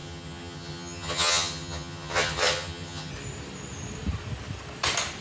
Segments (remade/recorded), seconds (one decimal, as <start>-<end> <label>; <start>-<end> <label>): 0.0-3.1 remade; 3.1-5.2 recorded